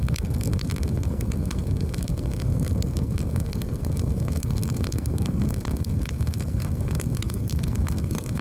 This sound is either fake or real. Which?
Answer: fake